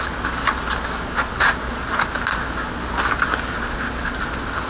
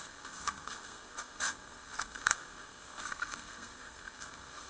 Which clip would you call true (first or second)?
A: first